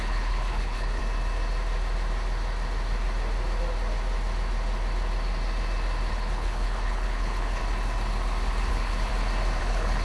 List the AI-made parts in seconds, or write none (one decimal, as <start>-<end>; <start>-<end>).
0.0-1.0; 6.1-7.6; 8.7-9.1; 9.6-10.0